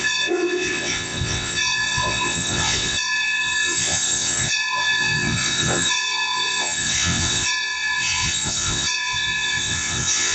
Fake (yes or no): yes